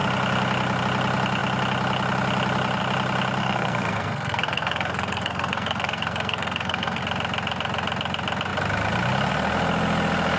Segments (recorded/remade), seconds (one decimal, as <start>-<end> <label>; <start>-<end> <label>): 0.0-3.4 recorded; 3.4-7.0 remade; 7.0-10.4 recorded